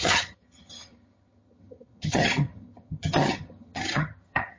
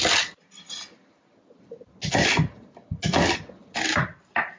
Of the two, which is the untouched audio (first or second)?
second